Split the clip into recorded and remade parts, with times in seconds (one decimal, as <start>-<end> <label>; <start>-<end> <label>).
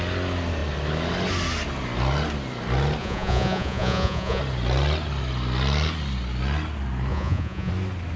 0.0-3.0 recorded; 3.0-4.4 remade; 4.4-7.1 recorded; 7.1-7.7 remade; 7.7-8.2 recorded